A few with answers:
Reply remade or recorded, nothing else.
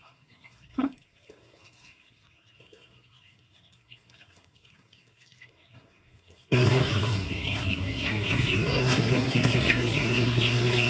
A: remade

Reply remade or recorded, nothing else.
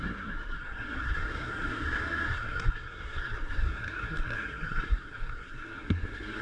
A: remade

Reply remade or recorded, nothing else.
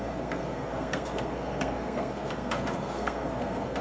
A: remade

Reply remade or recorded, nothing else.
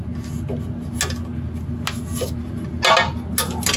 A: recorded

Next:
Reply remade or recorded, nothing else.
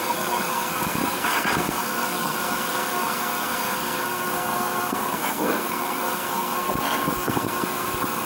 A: remade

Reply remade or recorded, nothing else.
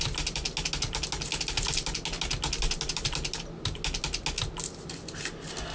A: recorded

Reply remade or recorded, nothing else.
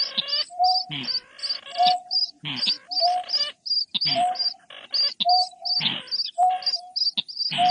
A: recorded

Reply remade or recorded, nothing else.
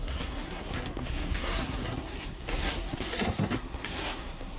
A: remade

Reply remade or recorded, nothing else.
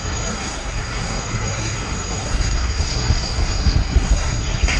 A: remade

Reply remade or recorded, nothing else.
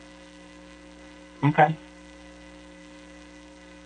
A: remade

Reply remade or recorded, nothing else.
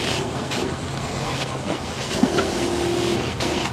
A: remade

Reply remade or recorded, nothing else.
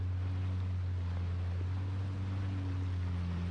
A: recorded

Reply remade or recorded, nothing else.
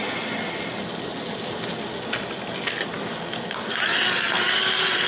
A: recorded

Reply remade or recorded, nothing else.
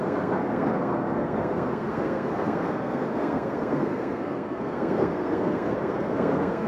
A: remade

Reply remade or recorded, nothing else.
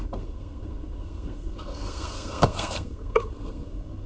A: remade